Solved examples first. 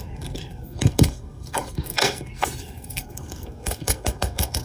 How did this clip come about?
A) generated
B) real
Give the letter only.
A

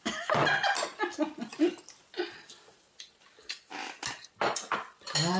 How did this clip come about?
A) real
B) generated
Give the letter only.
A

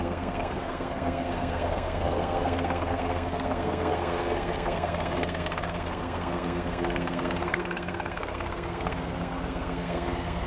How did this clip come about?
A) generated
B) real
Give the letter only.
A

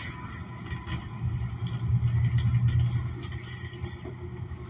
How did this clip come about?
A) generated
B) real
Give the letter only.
B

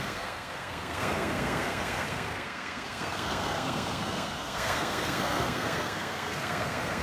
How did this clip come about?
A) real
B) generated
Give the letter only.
B